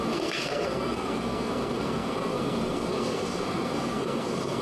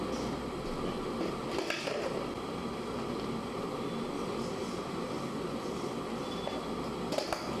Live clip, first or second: second